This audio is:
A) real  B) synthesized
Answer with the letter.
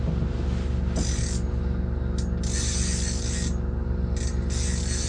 A